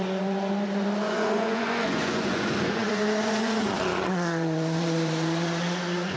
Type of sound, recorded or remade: remade